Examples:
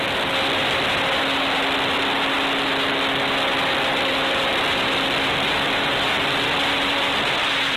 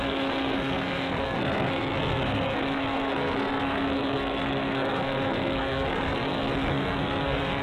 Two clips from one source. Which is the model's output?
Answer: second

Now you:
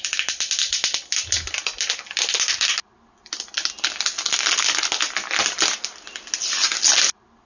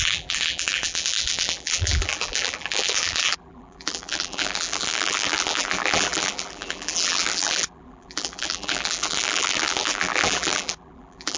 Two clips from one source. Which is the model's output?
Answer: second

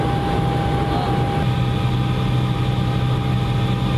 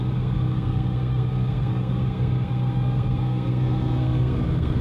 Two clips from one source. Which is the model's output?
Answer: second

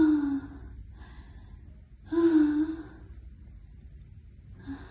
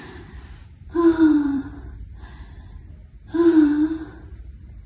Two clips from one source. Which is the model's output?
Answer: second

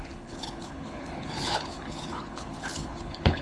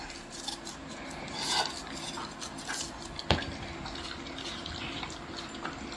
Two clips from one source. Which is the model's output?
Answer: first